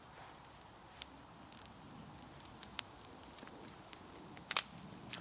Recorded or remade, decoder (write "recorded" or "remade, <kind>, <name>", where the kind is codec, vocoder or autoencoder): recorded